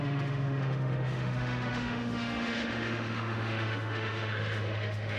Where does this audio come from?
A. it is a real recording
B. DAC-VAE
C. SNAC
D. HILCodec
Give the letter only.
B